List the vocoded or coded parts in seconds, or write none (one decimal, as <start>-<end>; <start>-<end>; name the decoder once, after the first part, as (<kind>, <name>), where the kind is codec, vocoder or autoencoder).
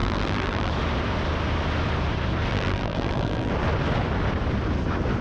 0.0-0.7 (vocoder, BigVGAN v2); 2.5-3.5